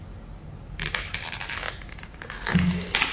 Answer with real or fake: real